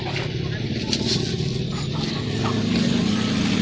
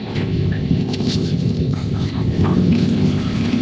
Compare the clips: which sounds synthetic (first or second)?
second